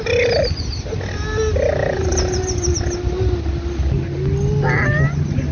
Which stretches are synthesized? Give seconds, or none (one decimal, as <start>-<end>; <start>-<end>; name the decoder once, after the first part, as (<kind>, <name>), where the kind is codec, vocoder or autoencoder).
1.8-2.7 (vocoder, BigVGAN v2)